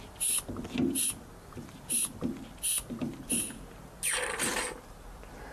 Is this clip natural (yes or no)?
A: yes